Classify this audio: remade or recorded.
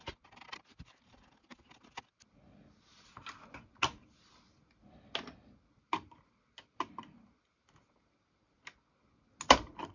recorded